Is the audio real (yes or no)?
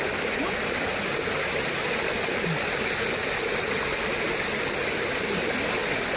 yes